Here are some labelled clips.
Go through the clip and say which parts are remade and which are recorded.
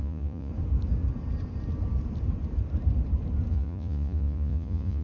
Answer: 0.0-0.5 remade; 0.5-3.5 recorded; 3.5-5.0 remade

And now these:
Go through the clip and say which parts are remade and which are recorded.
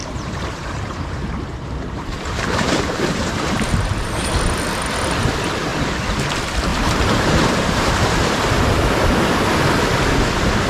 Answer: 0.0-4.3 remade; 4.3-6.7 recorded; 6.7-8.6 remade; 8.6-10.7 recorded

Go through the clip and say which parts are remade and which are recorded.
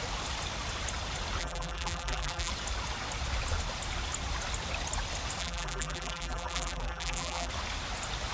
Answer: 0.0-1.4 recorded; 1.4-2.5 remade; 2.5-5.4 recorded; 5.4-7.5 remade; 7.5-8.3 recorded